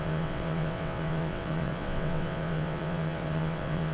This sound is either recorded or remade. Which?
remade